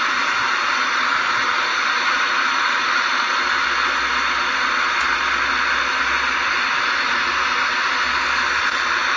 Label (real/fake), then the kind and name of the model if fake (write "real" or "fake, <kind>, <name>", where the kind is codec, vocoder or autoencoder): real